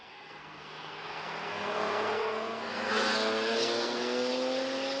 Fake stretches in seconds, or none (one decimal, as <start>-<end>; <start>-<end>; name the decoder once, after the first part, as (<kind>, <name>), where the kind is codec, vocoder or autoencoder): 0.0-4.3 (codec, SNAC)